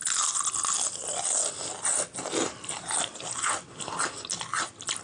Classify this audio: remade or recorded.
recorded